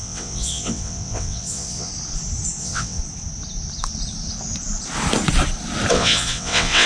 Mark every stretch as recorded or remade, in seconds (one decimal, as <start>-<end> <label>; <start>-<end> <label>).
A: 0.0-1.9 remade; 1.9-2.6 recorded; 2.6-3.0 remade; 3.0-5.9 recorded; 5.9-6.9 remade